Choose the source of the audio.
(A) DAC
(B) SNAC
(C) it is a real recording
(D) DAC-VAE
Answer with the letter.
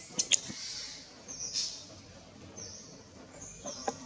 C